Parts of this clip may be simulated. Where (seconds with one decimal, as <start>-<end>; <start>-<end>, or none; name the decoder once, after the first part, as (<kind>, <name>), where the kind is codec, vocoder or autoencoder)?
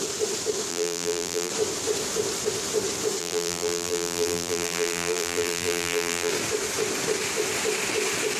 0.7-1.5 (vocoder, BigVGAN v2); 3.2-6.3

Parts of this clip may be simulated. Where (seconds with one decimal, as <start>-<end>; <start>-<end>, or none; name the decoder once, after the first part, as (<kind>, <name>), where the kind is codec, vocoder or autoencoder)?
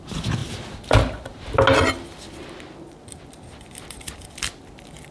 none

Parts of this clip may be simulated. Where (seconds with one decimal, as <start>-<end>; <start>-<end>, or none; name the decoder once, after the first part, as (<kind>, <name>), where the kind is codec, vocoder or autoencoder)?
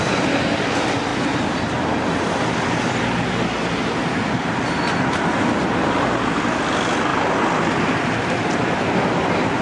none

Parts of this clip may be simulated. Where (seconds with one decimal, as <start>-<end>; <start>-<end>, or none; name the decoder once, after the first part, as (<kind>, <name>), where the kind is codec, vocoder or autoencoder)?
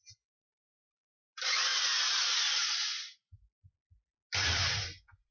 none